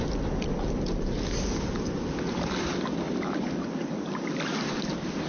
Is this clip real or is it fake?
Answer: real